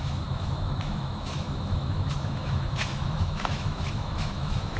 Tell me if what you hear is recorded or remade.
remade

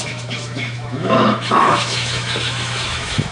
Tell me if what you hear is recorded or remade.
remade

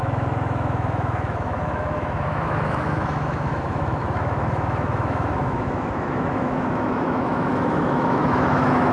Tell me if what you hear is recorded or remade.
remade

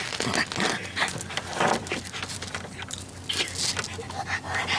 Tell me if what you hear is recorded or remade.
recorded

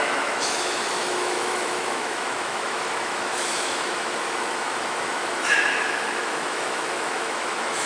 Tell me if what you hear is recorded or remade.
remade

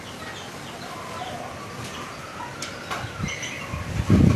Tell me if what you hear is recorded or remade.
recorded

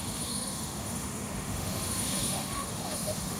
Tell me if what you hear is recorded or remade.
remade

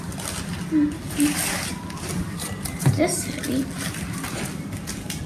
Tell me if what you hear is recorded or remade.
recorded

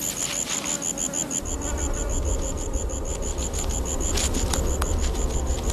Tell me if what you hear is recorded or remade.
recorded